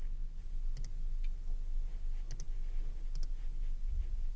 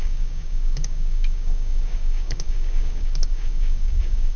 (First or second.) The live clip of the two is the first